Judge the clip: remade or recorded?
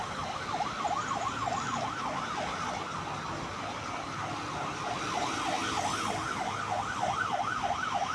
recorded